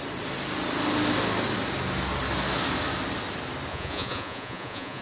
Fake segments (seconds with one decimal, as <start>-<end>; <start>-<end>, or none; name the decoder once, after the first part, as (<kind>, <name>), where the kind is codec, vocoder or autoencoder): 3.7-5.0 (vocoder, Vocos)

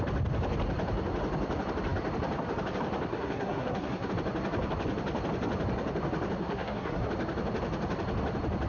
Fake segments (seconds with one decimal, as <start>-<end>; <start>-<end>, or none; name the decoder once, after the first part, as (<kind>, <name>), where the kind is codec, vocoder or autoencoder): 3.1-4.1 (codec, SNAC); 6.4-7.1